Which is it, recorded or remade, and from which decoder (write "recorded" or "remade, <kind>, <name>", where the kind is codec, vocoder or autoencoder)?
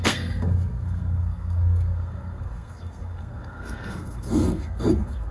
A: remade, codec, SNAC